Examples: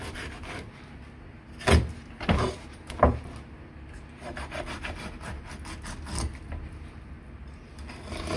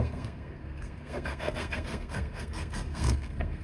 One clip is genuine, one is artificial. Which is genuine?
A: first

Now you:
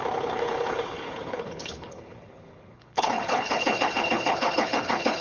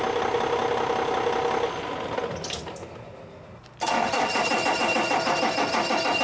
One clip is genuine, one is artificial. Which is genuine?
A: second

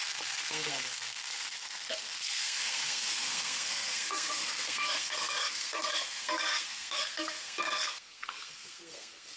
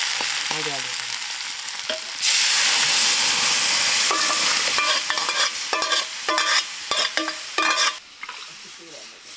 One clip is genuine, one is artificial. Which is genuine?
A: second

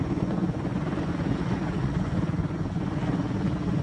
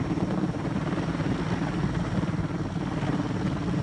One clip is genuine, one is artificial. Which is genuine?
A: second